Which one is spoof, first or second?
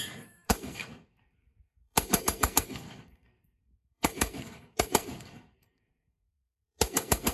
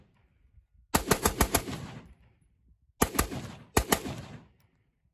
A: first